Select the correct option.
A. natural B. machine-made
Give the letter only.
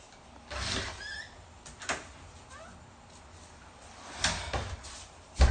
A